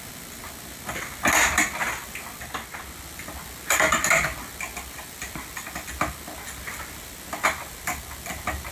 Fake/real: real